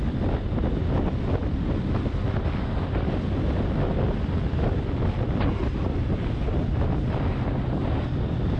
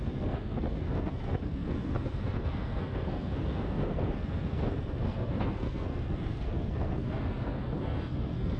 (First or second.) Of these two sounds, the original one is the first